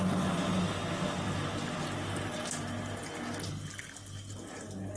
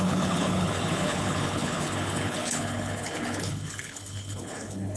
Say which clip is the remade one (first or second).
second